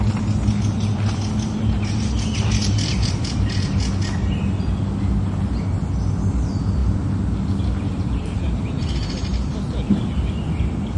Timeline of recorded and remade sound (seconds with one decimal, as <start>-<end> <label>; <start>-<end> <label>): 0.0-11.0 recorded